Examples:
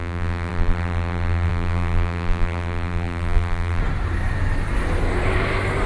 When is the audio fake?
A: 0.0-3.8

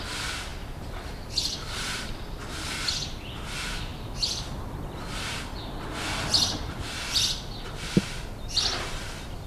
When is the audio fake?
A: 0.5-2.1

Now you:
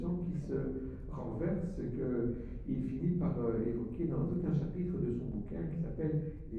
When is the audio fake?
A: none

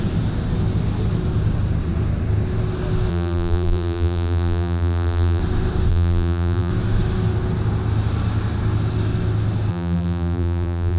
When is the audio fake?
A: 3.1-5.4; 5.9-6.7; 9.7-11.0